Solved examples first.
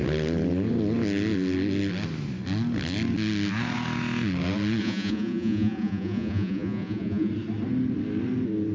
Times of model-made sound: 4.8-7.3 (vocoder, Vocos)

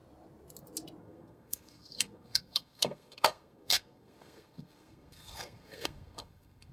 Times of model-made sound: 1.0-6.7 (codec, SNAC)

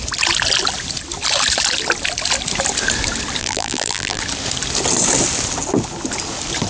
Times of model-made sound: 3.4-4.2 (vocoder, BigVGAN v2)

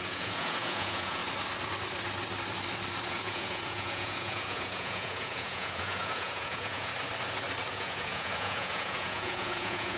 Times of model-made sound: 0.0-1.2 (vocoder, Vocos); 3.1-6.9; 7.7-10.0